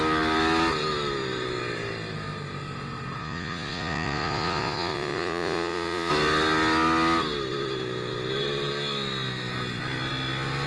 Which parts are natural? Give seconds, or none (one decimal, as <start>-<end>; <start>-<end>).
0.0-3.2; 6.1-10.7